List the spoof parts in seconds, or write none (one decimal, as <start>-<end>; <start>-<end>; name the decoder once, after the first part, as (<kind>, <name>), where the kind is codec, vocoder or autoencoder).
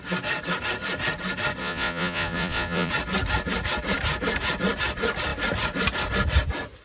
1.6-2.9 (vocoder, Vocos)